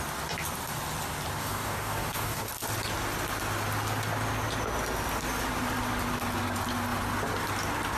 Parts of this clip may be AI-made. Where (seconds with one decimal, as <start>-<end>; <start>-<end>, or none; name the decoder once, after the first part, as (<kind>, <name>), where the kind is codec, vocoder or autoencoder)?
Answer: 1.4-2.5 (codec, DAC)